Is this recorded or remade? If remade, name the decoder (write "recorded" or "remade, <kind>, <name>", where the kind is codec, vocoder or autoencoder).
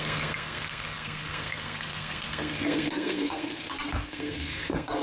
remade, codec, SNAC